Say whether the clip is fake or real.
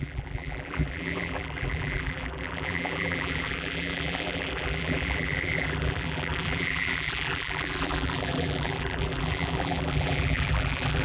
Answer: fake